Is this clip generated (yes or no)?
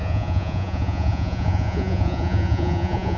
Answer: yes